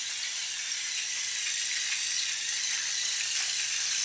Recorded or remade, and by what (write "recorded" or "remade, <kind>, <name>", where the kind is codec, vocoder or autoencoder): recorded